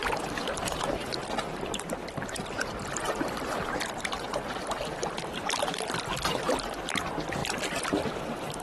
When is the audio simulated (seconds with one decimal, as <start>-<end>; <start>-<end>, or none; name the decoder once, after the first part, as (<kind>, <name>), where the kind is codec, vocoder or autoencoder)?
0.0-7.4 (vocoder, BigVGAN v2); 8.2-8.6